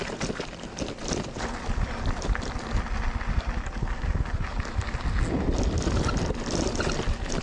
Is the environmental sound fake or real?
real